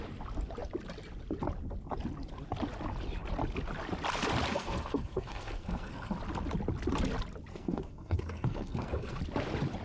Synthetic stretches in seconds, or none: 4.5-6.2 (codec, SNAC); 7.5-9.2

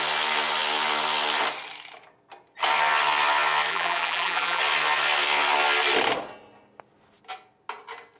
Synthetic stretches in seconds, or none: 3.7-4.6 (vocoder, BigVGAN v2)

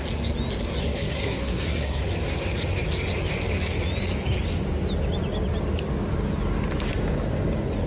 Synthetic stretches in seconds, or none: 0.8-2.0 (codec, SNAC)

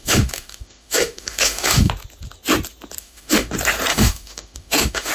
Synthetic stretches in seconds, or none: 0.0-1.9 (autoencoder, DAC-VAE); 3.0-3.5; 3.9-5.1

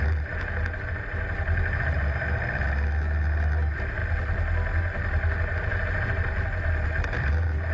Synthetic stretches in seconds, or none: none